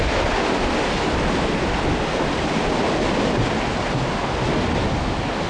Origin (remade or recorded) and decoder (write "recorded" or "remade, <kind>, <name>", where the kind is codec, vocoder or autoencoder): recorded